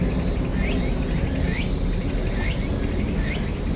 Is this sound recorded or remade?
recorded